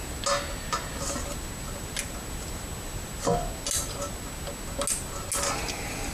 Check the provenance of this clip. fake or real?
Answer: real